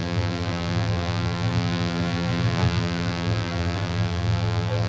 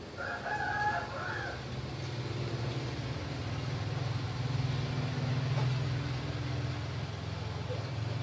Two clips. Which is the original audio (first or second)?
second